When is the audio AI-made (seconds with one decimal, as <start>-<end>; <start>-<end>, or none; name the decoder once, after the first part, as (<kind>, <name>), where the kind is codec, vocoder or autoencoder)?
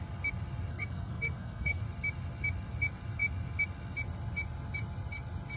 0.7-1.8 (codec, SNAC)